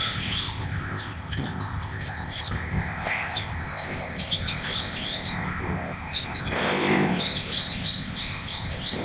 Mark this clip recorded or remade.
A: remade